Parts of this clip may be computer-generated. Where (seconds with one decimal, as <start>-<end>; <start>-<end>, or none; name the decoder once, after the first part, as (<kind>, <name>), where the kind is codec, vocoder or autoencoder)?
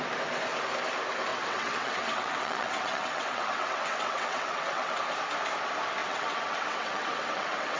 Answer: 1.3-4.9 (vocoder, WaveNeXt); 6.0-7.8